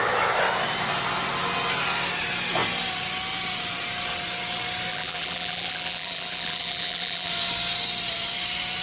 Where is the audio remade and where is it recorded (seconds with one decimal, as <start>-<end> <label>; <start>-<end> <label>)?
0.0-4.9 recorded; 4.9-7.3 remade; 7.3-8.8 recorded